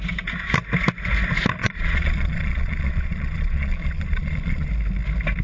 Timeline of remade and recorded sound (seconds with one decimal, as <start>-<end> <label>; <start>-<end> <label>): 0.0-1.6 recorded; 1.6-4.7 remade; 4.7-5.4 recorded